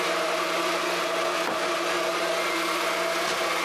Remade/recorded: recorded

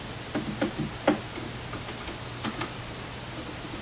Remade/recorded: recorded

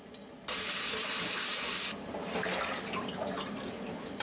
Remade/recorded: recorded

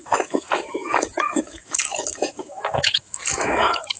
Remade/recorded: remade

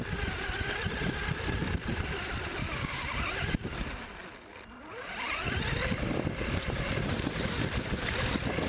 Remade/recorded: recorded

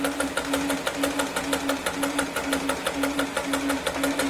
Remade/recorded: recorded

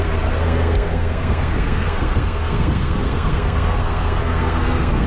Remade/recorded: remade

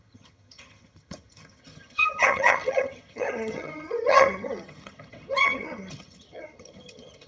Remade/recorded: remade